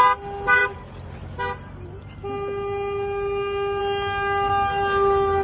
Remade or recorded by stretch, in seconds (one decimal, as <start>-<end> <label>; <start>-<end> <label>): 0.0-5.4 recorded